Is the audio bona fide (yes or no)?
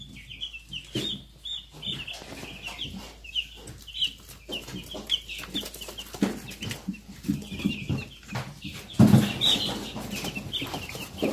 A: yes